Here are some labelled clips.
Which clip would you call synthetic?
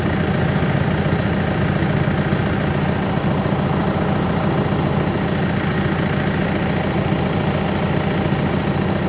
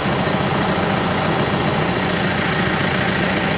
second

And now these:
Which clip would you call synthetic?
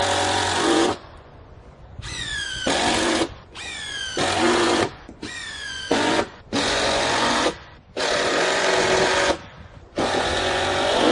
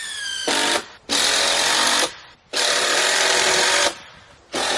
first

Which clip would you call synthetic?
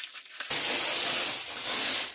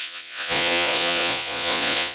second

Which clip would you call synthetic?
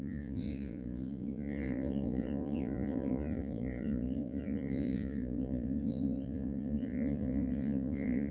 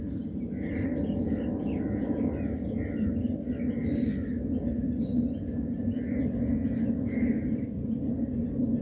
first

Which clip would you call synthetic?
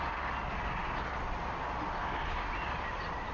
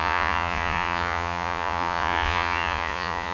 second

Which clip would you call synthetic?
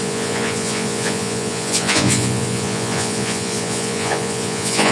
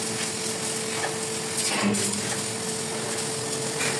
first